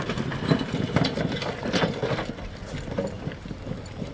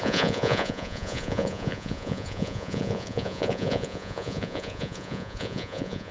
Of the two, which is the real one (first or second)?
first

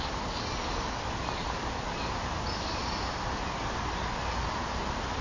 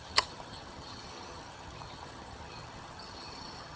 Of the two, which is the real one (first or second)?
first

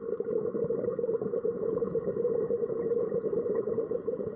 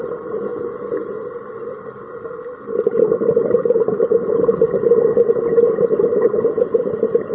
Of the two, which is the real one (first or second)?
second